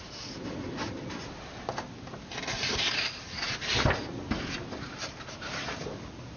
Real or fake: real